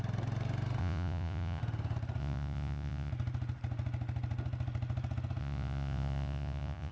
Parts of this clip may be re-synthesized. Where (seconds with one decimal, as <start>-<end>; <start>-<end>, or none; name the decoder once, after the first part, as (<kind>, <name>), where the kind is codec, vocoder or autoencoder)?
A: 0.8-1.6 (vocoder, Vocos); 2.2-3.1; 5.4-6.9